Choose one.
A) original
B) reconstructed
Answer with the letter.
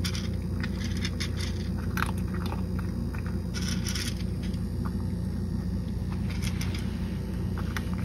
A